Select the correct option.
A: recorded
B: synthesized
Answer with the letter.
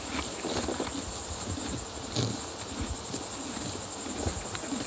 A